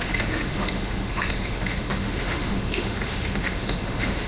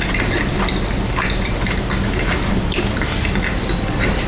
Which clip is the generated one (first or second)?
first